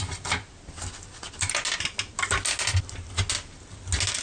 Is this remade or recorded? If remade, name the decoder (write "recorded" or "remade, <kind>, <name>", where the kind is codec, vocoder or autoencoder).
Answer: recorded